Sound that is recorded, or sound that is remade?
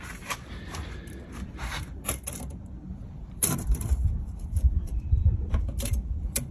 remade